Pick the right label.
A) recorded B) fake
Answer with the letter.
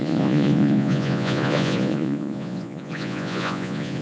B